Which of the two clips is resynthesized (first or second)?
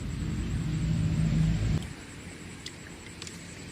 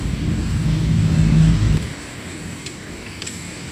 second